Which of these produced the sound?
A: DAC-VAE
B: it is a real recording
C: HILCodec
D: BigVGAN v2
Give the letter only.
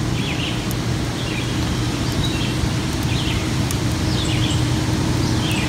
B